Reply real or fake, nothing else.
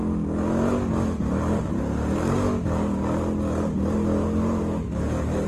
real